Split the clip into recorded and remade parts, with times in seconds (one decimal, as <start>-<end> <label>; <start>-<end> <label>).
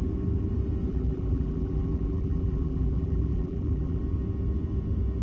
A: 0.0-0.9 recorded; 0.9-4.0 remade; 4.0-5.2 recorded